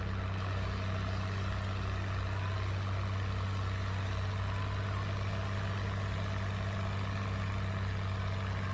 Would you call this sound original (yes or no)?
yes